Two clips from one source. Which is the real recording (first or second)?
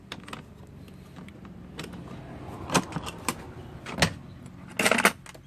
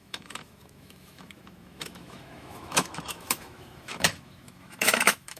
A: first